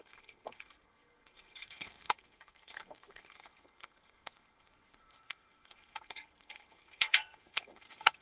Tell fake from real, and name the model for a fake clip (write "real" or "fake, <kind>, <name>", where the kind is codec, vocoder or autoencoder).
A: fake, codec, SNAC